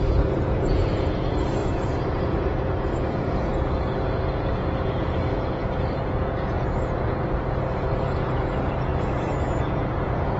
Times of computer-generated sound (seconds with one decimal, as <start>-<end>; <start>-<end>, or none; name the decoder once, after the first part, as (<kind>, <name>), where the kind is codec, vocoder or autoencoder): 0.0-10.4 (vocoder, Vocos)